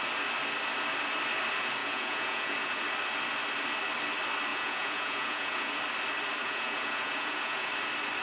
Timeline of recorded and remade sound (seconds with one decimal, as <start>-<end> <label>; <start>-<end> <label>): 0.0-1.8 recorded; 1.8-2.8 remade; 2.8-4.5 recorded; 4.5-5.8 remade; 5.8-6.4 recorded; 6.4-7.7 remade; 7.7-8.2 recorded